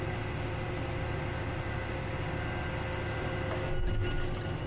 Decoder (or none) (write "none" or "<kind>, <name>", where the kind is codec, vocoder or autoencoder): none